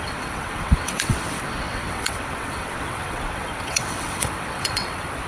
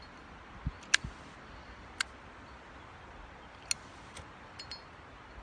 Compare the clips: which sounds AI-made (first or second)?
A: first